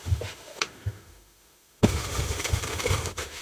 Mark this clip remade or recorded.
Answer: remade